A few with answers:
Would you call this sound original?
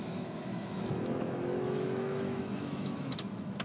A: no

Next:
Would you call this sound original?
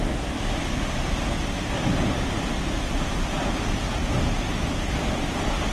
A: yes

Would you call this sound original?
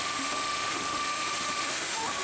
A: no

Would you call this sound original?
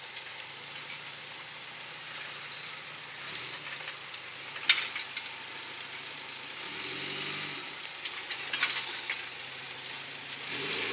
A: yes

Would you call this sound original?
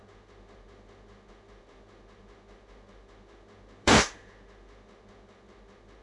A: no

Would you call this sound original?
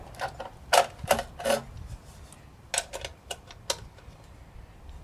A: yes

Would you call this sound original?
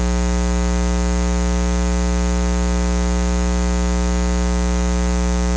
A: yes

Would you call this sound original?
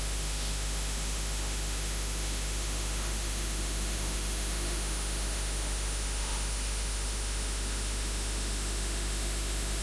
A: no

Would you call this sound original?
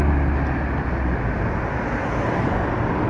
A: yes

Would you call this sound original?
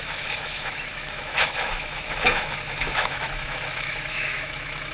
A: no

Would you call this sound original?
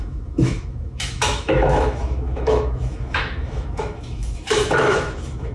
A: no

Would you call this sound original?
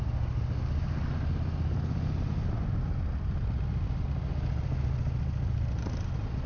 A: yes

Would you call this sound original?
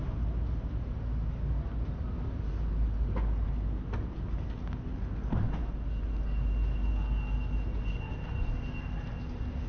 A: yes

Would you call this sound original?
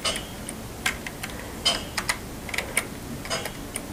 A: yes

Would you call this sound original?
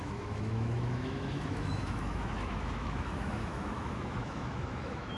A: no